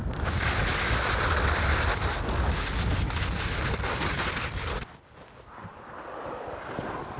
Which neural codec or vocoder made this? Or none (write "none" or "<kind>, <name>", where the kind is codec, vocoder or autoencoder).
none